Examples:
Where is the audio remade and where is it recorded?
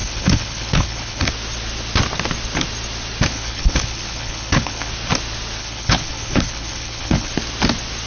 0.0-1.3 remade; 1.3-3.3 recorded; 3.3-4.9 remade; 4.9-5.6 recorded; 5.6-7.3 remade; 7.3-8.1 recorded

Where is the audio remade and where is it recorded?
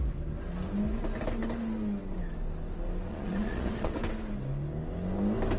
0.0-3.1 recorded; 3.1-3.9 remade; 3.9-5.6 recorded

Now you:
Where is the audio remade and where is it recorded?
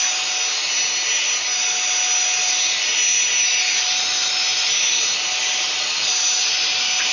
0.0-7.1 recorded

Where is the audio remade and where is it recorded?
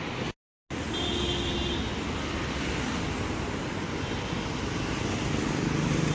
0.0-6.1 recorded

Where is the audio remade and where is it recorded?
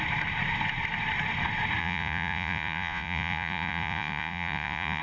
0.0-1.8 recorded; 1.8-5.0 remade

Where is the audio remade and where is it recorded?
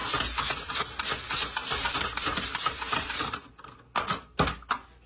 0.0-1.6 recorded; 1.6-3.4 remade; 3.4-5.1 recorded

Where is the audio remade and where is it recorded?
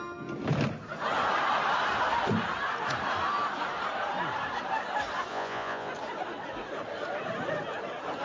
0.0-5.3 recorded; 5.3-5.9 remade; 5.9-8.2 recorded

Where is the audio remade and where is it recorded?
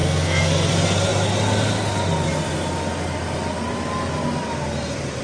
0.0-0.7 remade; 0.7-5.2 recorded